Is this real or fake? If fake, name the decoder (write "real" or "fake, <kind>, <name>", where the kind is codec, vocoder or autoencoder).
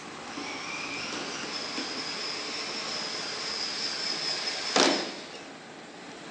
real